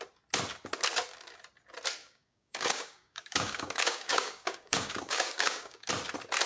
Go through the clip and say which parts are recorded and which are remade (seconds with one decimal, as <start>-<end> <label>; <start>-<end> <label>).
0.0-2.0 recorded; 2.0-5.9 remade; 5.9-6.5 recorded